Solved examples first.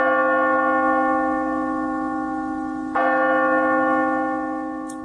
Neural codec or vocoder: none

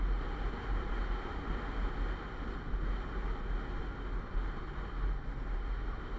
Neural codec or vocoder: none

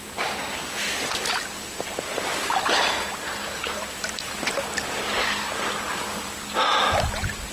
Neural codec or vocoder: none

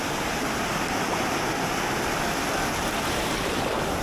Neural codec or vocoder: none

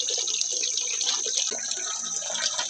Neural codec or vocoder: none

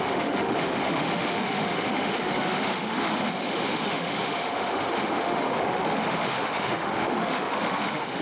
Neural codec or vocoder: autoencoder, DAC-VAE